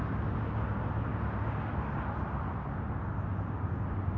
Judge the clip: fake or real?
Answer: real